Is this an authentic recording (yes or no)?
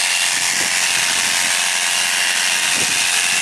yes